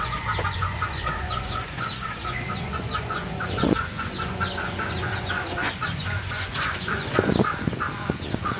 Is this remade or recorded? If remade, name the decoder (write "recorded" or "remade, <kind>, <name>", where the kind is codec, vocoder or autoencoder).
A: remade, vocoder, Vocos